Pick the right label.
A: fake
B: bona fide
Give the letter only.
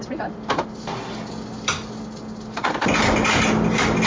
B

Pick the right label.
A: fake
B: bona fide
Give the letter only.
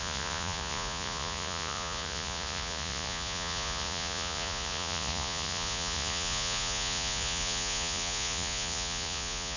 A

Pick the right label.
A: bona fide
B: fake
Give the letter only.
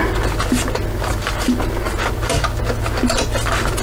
A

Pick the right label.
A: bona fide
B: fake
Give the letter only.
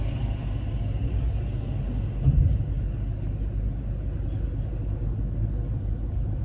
A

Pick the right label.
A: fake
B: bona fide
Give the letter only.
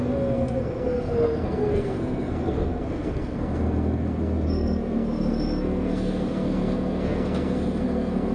A